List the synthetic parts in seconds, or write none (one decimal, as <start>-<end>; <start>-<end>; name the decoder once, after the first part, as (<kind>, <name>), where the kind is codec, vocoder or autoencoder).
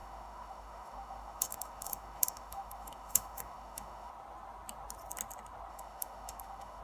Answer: 0.0-4.1 (autoencoder, DAC-VAE); 5.7-6.8